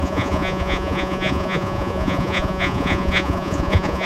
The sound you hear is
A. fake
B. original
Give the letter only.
A